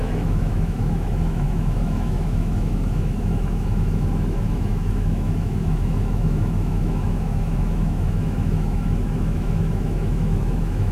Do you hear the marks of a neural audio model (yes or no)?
yes